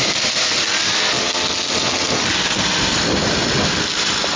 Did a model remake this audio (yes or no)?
no